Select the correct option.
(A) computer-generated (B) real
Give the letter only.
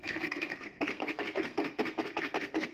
A